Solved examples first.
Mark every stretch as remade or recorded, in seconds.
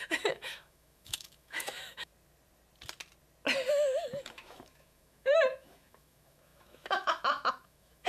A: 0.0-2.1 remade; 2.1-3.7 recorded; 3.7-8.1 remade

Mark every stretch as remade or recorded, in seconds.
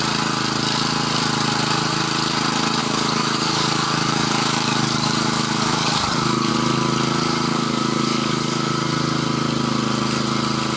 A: 0.0-2.8 recorded; 2.8-6.5 remade; 6.5-7.5 recorded; 7.5-8.7 remade; 8.7-10.8 recorded